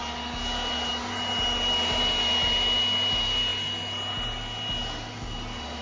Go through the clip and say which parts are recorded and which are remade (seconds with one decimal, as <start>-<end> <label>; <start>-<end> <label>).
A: 0.0-5.8 recorded